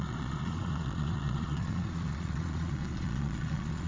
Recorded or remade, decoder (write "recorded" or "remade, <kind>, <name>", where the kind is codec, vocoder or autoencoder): remade, vocoder, Vocos